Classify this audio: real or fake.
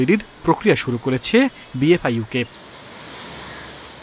real